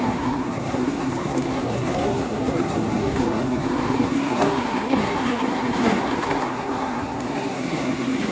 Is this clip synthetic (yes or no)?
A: yes